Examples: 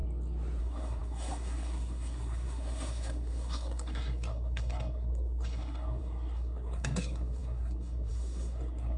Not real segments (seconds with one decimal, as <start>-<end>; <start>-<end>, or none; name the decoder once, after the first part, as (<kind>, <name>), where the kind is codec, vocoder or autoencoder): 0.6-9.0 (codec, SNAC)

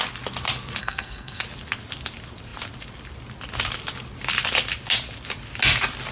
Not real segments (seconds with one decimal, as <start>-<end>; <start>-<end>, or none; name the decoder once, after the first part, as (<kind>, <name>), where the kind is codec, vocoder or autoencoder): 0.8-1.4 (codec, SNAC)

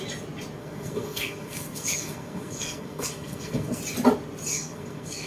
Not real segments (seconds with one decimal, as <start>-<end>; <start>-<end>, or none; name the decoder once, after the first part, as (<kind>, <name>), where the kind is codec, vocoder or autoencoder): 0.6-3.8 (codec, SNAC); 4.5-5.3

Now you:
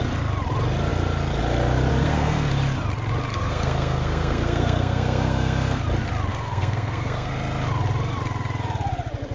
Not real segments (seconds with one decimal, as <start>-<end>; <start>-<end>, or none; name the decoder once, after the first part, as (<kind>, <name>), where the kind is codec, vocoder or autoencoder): 1.9-2.5 (codec, SNAC); 3.3-5.8; 6.3-7.3

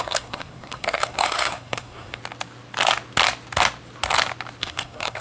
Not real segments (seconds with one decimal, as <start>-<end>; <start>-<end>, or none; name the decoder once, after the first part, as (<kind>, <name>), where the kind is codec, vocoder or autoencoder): 0.0-2.2 (codec, SNAC); 4.6-5.2

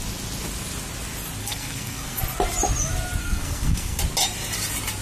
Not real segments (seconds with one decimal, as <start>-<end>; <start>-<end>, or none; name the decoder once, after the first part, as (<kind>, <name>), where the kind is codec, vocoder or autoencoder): 1.4-2.2 (codec, SNAC); 3.2-4.0

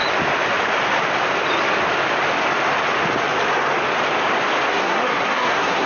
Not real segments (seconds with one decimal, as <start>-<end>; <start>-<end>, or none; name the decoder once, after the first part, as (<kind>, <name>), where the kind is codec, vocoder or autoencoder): 4.7-5.9 (codec, SNAC)